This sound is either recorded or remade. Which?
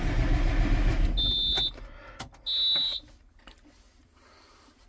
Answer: recorded